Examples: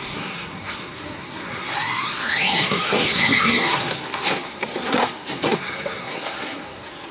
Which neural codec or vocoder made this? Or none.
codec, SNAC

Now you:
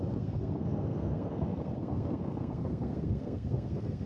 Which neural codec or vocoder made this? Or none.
codec, SNAC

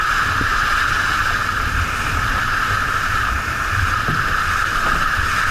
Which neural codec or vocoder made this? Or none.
none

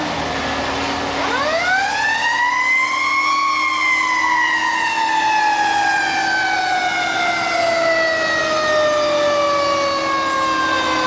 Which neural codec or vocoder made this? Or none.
none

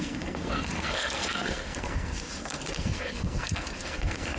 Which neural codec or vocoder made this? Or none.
codec, SNAC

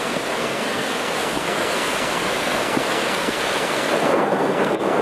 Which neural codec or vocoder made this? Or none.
codec, SNAC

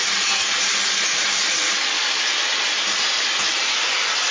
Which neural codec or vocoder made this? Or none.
none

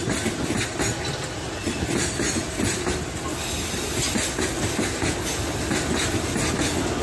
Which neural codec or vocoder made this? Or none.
none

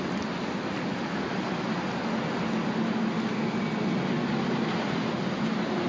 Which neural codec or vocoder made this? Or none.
none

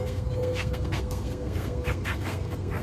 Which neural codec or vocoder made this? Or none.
codec, SNAC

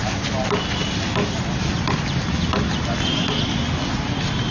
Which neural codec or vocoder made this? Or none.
none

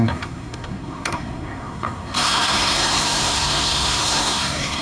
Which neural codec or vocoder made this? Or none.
codec, SNAC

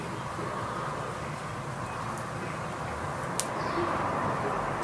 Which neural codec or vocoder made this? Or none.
none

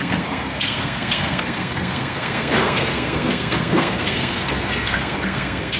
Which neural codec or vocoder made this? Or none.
codec, SNAC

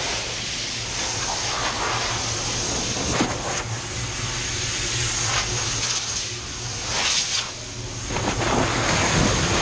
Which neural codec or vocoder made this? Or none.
none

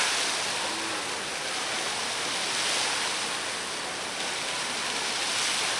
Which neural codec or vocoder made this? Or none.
none